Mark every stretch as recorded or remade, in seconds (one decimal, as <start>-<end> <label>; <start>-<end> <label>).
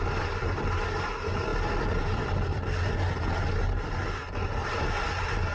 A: 0.0-5.5 recorded